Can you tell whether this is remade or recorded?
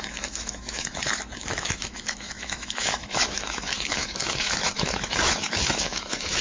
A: remade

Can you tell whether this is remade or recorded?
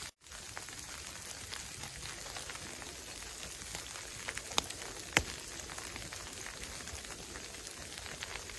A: recorded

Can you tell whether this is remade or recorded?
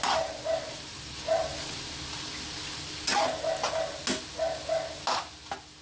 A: recorded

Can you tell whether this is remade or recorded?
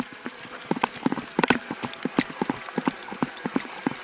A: recorded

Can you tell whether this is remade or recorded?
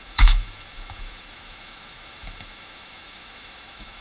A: remade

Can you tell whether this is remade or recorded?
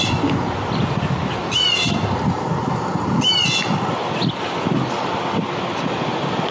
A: recorded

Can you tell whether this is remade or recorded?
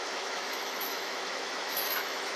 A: remade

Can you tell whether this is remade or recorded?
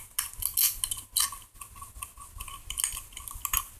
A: recorded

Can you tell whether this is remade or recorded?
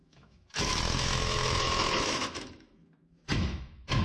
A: remade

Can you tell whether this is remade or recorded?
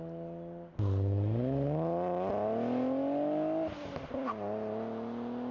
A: recorded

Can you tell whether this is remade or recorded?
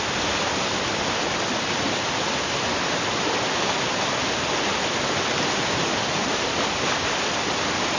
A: recorded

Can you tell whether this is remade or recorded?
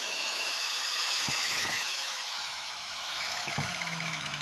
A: remade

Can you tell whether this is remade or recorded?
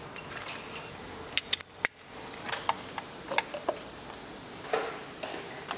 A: recorded